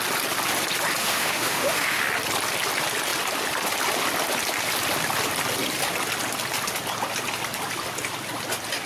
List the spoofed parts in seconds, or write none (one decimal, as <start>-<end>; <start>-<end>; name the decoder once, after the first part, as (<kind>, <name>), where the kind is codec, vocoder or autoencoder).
1.0-2.0 (autoencoder, DAC-VAE)